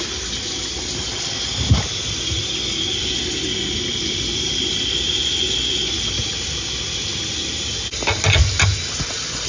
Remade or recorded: recorded